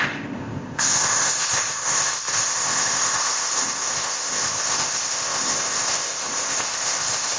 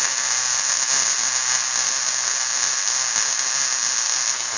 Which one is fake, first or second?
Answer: first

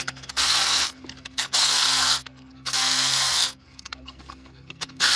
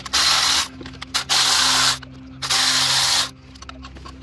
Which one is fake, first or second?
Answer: first